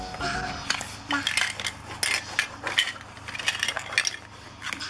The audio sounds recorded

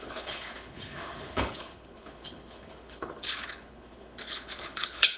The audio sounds remade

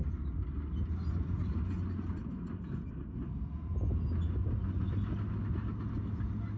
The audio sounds recorded